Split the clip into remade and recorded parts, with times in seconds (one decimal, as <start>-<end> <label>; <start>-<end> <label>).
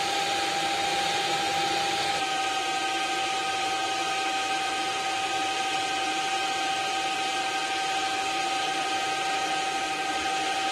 0.0-0.9 recorded; 0.9-1.4 remade; 1.4-10.7 recorded